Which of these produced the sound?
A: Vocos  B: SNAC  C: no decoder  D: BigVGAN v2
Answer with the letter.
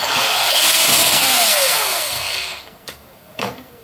B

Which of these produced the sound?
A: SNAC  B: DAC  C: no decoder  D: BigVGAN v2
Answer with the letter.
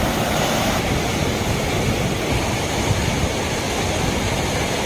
C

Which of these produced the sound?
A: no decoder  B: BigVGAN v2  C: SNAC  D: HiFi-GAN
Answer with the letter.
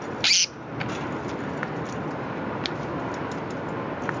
A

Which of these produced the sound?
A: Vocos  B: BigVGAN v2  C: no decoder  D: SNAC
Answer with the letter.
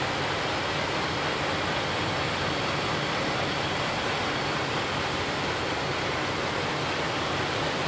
C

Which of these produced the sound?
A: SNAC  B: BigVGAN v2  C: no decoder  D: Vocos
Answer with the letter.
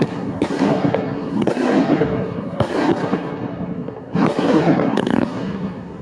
A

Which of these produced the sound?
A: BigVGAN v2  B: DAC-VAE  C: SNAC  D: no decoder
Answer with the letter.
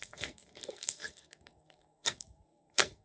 C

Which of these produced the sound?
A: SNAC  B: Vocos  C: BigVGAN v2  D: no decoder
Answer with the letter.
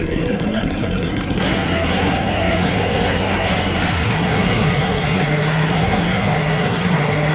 A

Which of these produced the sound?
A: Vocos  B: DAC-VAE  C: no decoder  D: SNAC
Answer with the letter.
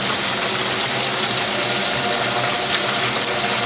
C